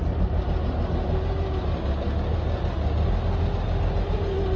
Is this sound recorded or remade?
recorded